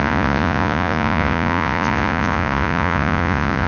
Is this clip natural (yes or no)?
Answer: no